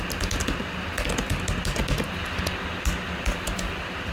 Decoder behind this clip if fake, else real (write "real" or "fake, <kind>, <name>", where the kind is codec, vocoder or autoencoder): real